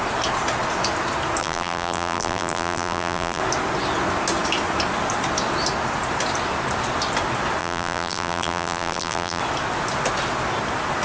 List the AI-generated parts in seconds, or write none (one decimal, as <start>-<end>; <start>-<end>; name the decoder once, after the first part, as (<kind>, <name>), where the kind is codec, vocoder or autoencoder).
1.4-3.4 (vocoder, BigVGAN v2); 7.6-9.4